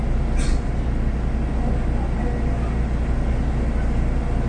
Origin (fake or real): real